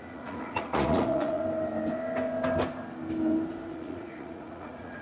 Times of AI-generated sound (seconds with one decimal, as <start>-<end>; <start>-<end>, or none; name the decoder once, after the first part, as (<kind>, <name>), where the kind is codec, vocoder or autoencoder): 0.0-1.4 (vocoder, Vocos); 3.7-5.0